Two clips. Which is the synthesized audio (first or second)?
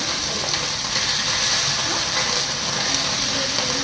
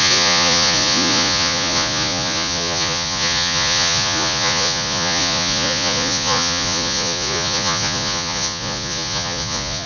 second